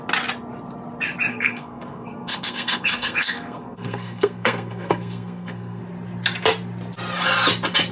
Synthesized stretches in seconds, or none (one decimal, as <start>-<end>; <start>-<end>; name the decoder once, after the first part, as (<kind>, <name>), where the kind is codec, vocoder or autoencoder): 1.3-5.8 (codec, SNAC)